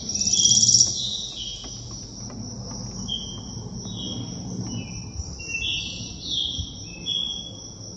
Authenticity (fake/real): real